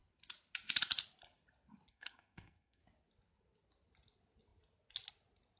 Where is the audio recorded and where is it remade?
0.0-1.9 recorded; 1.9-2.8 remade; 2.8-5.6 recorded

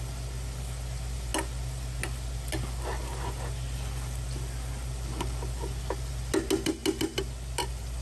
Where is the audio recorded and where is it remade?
0.0-8.0 recorded

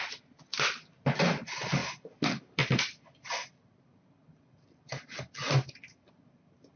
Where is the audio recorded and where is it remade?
0.0-6.8 recorded

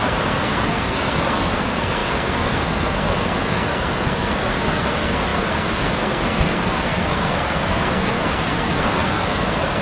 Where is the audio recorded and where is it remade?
0.0-9.8 remade